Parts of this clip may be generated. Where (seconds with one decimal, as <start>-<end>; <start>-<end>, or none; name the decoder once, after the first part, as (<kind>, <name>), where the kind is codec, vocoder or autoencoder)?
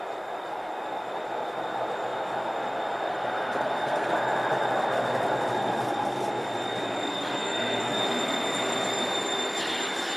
3.1-4.1 (codec, SNAC); 7.1-8.0